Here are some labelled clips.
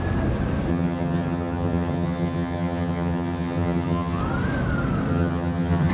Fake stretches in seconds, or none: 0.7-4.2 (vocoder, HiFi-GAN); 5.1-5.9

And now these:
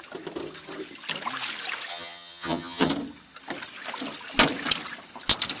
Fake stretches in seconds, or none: 1.9-2.9 (vocoder, HiFi-GAN)

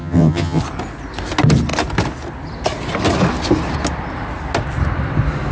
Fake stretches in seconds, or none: 0.0-0.6 (vocoder, HiFi-GAN)

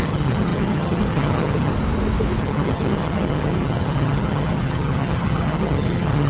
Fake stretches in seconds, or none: 0.0-1.7 (vocoder, HiFi-GAN); 2.4-6.3

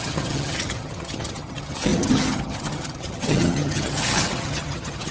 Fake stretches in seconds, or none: 0.0-5.1 (vocoder, HiFi-GAN)

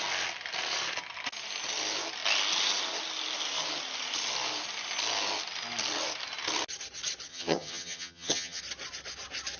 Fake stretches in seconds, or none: 7.3-8.6 (vocoder, HiFi-GAN)

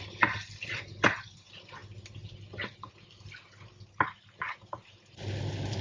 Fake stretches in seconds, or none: none